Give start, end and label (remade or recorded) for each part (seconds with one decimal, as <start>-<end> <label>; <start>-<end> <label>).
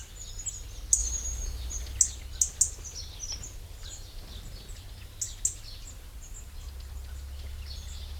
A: 0.0-8.2 recorded